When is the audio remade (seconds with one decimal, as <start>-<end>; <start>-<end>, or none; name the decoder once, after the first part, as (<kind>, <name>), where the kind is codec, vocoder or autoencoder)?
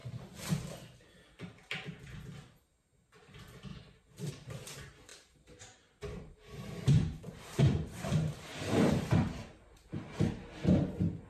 5.1-8.9 (vocoder, BigVGAN v2)